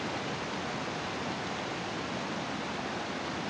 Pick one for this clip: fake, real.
real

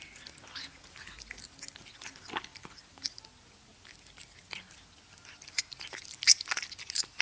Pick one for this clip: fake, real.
real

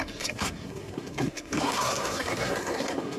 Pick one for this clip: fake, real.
fake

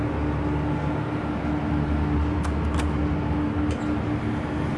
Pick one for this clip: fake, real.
real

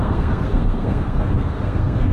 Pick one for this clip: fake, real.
fake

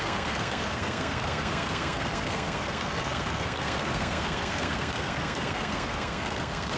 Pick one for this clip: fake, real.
fake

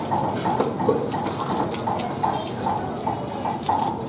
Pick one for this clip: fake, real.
real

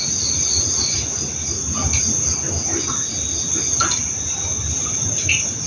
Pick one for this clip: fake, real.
real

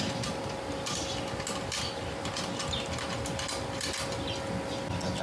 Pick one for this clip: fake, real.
real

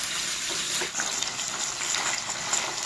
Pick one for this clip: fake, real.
real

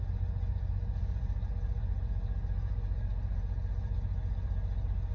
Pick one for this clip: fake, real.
real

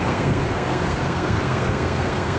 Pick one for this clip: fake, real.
fake